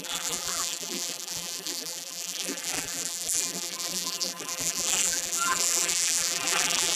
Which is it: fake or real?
fake